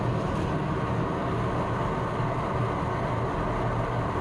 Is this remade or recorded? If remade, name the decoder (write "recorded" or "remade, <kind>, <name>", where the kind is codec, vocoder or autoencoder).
recorded